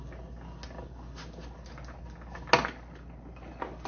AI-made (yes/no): no